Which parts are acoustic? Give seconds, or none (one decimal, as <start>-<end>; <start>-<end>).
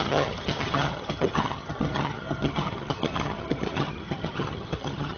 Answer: none